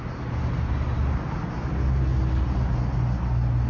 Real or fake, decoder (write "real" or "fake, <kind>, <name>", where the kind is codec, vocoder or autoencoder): real